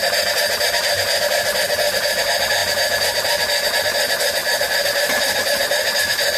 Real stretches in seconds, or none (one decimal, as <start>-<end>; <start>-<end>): 0.7-4.4; 6.0-6.4